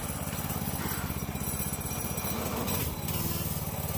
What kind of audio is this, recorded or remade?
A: recorded